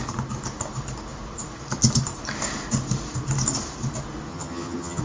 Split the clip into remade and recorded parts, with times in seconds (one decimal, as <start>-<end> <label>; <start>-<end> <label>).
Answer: 0.0-4.3 recorded; 4.3-5.0 remade